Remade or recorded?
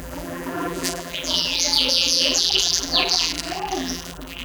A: remade